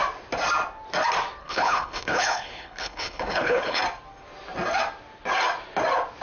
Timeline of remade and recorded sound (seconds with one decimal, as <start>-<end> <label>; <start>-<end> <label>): 0.0-1.4 recorded; 1.4-3.8 remade; 3.8-6.2 recorded